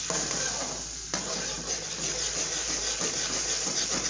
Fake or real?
real